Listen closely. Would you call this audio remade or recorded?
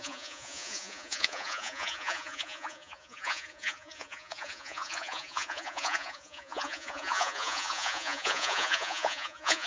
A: remade